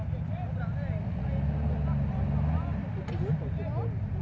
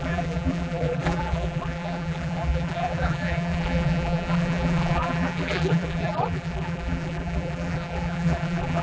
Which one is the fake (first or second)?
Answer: second